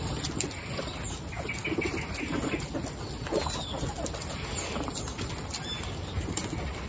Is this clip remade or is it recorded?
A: recorded